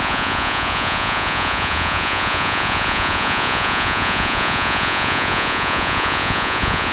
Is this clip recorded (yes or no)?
no